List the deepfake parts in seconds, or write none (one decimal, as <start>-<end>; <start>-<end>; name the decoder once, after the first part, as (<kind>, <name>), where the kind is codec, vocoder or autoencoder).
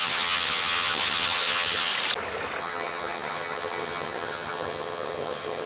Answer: 0.0-1.9 (vocoder, HiFi-GAN); 2.6-5.7